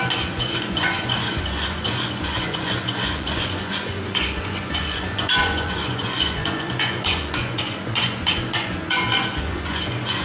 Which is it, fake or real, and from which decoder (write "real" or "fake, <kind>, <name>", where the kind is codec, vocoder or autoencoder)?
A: fake, vocoder, Vocos